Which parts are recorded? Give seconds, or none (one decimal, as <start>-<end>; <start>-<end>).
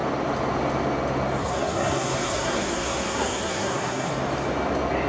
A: 0.0-1.4; 4.1-5.1